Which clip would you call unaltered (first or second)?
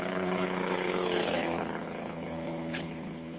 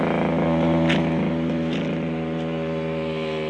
second